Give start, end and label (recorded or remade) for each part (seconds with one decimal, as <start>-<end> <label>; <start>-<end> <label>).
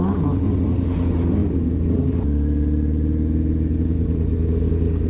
0.0-5.1 recorded